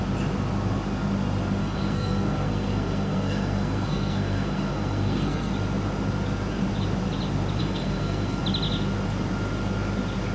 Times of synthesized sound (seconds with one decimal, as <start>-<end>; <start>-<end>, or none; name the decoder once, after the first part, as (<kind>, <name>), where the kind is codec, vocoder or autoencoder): 1.6-5.5 (codec, SNAC); 7.6-8.4